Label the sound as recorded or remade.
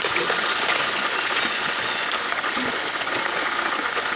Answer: remade